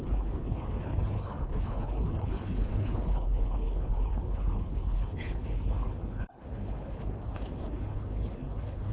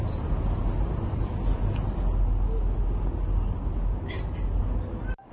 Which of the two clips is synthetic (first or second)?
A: first